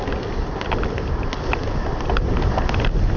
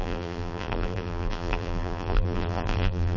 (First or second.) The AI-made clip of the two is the second